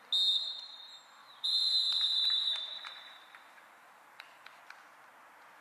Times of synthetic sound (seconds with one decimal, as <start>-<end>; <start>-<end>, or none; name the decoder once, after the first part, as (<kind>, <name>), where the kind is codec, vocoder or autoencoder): 1.2-4.6 (vocoder, BigVGAN v2)